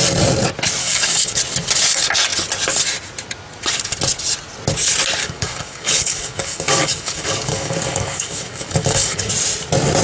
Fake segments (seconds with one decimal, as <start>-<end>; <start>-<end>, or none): 0.8-1.4; 5.2-9.3